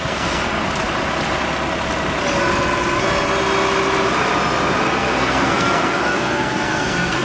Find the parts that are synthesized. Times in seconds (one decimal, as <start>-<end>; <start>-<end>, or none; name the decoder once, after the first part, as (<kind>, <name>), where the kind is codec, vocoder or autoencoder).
0.0-0.6 (codec, SNAC); 4.9-7.2